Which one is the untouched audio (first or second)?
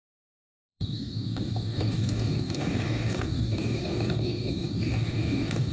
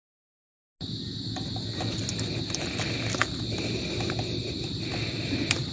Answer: second